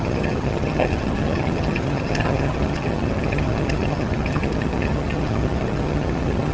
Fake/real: fake